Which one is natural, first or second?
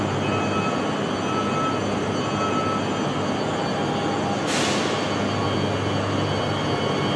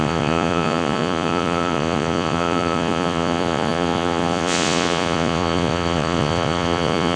first